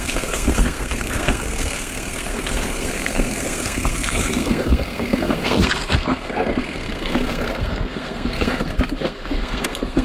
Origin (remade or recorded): remade